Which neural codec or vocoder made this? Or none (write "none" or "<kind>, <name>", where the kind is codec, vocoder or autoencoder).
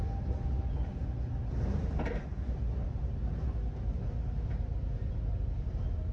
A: none